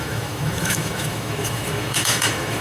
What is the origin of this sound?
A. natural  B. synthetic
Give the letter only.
B